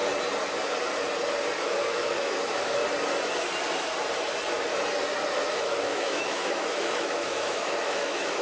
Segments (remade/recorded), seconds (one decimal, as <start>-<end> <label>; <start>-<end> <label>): 0.0-1.6 recorded; 1.6-2.8 remade; 2.8-5.5 recorded; 5.5-8.4 remade